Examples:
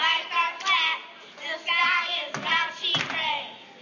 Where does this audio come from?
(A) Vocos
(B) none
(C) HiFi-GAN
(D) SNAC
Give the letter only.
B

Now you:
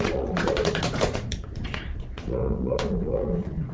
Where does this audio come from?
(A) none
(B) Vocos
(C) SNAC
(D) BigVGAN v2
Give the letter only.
B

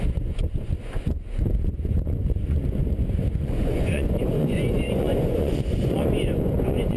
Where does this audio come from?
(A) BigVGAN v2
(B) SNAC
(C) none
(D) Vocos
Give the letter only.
D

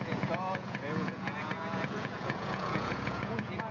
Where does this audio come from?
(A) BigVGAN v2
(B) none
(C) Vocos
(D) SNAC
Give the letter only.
C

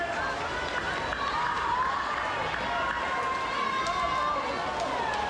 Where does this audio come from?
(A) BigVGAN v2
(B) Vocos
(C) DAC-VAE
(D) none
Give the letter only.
D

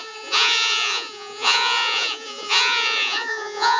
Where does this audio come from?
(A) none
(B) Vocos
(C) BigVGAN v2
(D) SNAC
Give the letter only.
B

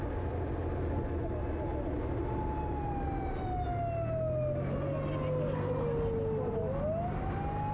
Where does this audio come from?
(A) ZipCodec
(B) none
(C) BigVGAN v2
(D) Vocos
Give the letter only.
B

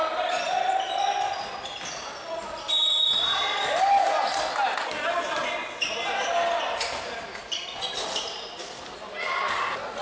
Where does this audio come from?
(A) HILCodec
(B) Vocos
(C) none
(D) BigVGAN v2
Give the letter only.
C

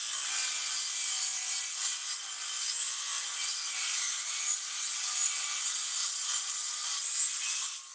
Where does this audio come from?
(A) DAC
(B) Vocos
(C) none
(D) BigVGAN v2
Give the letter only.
C